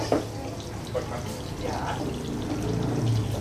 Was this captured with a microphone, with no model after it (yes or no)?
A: yes